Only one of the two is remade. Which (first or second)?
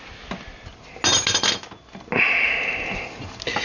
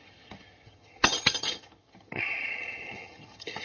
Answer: second